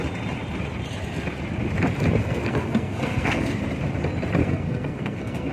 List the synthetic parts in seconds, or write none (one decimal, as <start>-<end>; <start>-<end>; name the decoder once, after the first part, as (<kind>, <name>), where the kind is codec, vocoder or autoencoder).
2.2-3.6 (codec, SNAC); 4.4-5.5